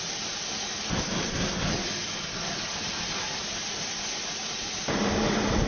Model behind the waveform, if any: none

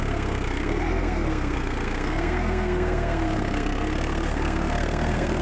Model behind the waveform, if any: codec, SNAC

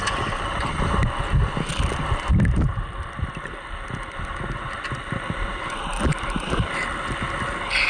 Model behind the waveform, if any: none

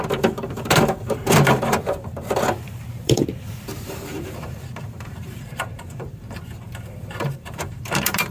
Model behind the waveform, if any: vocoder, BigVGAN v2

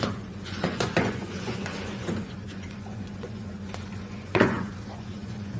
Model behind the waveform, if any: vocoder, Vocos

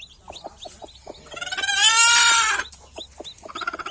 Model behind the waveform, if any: none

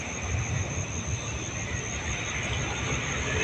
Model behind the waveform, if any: none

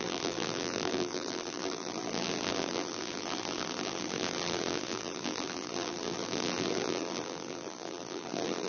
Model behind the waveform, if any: vocoder, BigVGAN v2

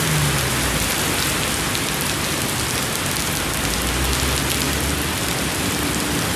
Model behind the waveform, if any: none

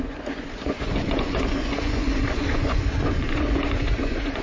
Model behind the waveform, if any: vocoder, Vocos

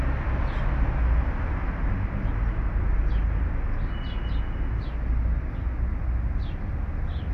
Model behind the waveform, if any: none